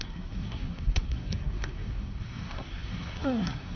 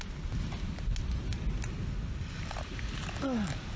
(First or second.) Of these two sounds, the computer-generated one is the first